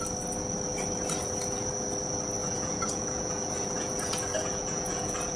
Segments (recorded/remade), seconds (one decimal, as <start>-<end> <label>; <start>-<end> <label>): 0.0-2.4 recorded; 2.4-5.4 remade